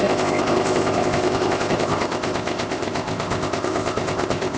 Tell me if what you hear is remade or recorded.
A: remade